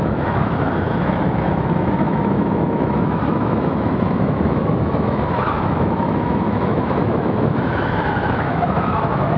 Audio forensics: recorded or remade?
remade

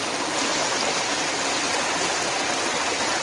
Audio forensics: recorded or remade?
recorded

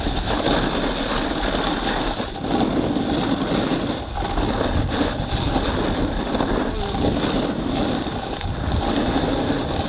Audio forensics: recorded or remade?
recorded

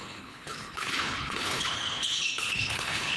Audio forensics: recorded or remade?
remade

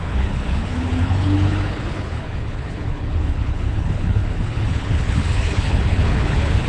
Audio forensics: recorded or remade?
remade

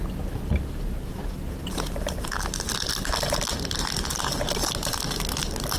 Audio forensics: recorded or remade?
recorded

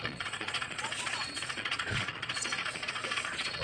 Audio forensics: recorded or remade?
remade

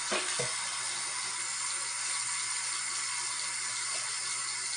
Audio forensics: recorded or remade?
recorded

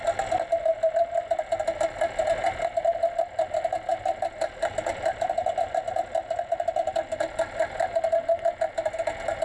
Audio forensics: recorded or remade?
recorded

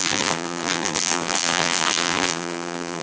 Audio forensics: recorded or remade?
remade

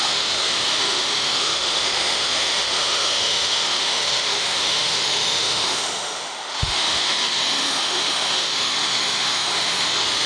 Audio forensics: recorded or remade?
remade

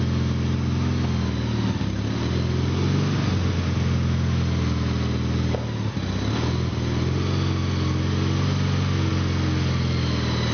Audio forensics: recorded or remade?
recorded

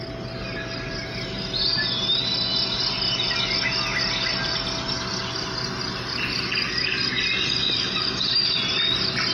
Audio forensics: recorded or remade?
recorded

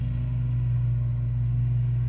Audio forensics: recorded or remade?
recorded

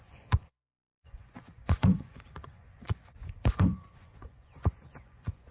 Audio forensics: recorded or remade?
remade